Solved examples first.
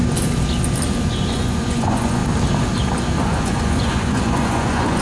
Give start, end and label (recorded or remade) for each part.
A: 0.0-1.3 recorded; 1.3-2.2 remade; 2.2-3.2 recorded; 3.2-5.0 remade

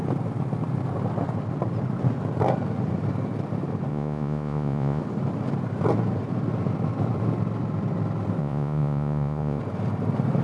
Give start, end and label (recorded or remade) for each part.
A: 0.0-3.9 recorded; 3.9-5.0 remade; 5.0-8.4 recorded; 8.4-9.6 remade; 9.6-10.4 recorded

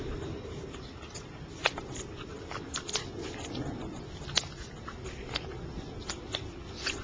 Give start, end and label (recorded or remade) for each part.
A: 0.0-7.0 recorded

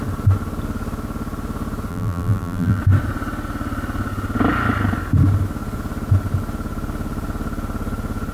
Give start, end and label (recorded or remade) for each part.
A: 0.0-1.9 recorded; 1.9-2.8 remade; 2.8-8.3 recorded

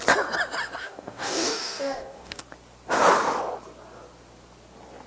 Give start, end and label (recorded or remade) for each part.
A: 0.0-0.8 recorded; 0.8-2.4 remade; 2.4-5.1 recorded

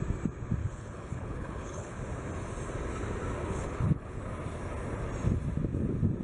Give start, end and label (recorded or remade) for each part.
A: 0.0-0.6 recorded; 0.6-2.0 remade; 2.0-3.4 recorded; 3.4-4.2 remade; 4.2-6.2 recorded

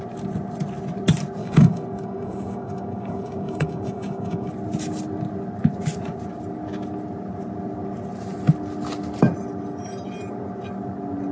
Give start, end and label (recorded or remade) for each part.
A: 0.0-1.4 recorded; 1.4-4.5 remade; 4.5-11.3 recorded

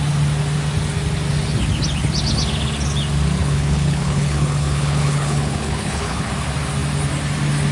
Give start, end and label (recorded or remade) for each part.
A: 0.0-3.4 recorded; 3.4-6.3 remade; 6.3-7.7 recorded